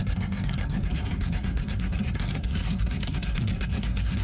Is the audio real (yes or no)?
no